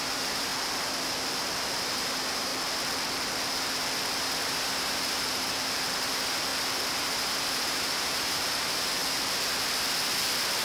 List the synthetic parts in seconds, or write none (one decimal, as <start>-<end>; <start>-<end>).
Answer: 0.0-0.5; 1.6-2.5; 4.4-6.5; 7.0-9.0